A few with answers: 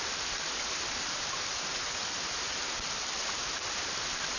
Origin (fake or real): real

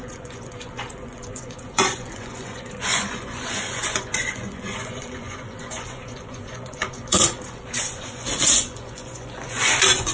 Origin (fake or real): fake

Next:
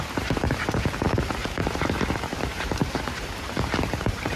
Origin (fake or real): fake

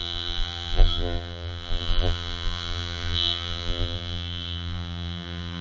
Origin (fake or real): fake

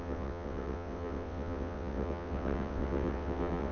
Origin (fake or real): fake